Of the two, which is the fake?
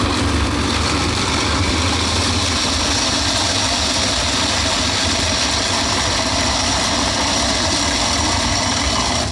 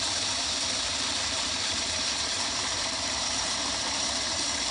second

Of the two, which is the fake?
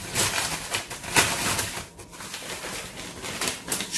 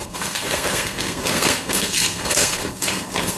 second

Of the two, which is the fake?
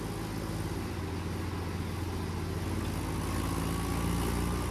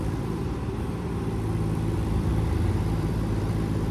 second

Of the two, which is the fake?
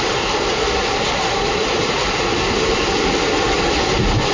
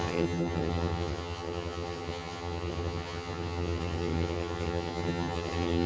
second